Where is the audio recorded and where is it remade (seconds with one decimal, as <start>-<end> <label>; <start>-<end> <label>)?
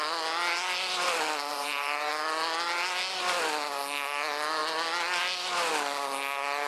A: 0.0-1.5 recorded; 1.5-2.1 remade; 2.1-6.7 recorded